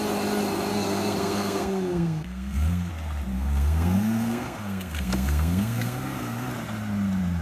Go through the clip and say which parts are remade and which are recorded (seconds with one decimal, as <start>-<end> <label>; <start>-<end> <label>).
0.0-0.7 recorded; 0.7-2.9 remade; 2.9-3.3 recorded; 3.3-6.5 remade; 6.5-7.4 recorded